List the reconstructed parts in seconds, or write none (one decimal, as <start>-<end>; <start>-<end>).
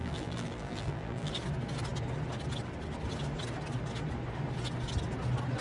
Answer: 0.0-1.3